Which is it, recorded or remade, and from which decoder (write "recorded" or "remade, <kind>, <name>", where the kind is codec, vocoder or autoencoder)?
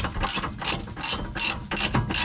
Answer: recorded